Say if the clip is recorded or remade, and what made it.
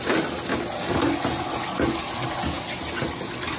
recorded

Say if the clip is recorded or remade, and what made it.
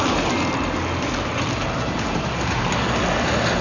recorded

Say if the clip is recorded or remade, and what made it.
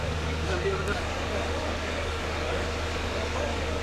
remade, codec, DAC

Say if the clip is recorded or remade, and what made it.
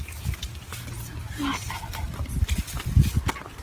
recorded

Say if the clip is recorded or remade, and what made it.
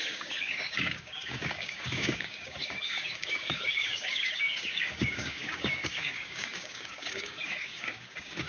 remade, codec, DAC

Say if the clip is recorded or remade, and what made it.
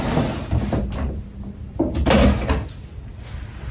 recorded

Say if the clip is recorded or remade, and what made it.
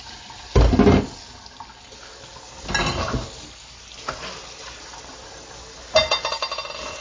recorded